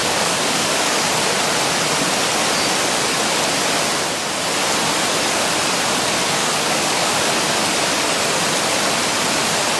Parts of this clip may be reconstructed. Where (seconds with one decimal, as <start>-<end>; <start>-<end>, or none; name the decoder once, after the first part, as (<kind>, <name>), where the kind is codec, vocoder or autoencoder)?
0.0-1.0 (codec, DAC); 6.4-7.3